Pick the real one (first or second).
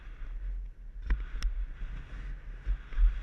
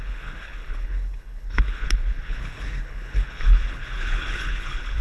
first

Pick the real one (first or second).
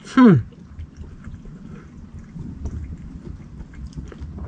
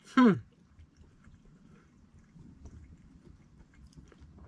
first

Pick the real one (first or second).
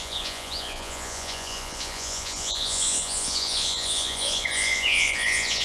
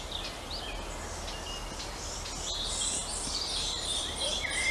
second